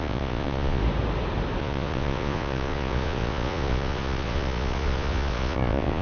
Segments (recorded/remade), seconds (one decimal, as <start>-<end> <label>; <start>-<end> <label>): 0.0-0.8 remade; 0.8-1.6 recorded; 1.6-6.0 remade